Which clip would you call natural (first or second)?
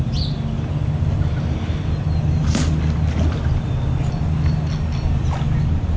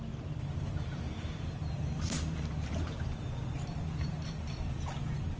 first